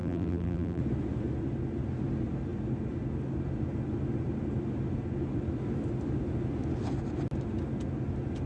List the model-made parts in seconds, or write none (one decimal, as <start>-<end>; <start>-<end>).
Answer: 0.0-0.8